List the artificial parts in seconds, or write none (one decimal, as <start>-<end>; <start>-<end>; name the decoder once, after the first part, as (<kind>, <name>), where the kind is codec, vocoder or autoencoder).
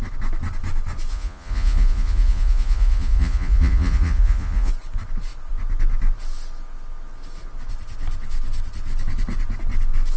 1.1-4.7 (vocoder, Vocos)